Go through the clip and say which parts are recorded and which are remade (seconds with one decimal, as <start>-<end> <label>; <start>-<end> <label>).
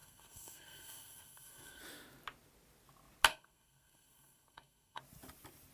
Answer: 0.0-1.8 remade; 1.8-3.3 recorded; 3.3-5.0 remade; 5.0-5.7 recorded